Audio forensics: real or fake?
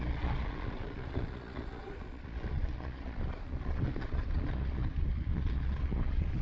fake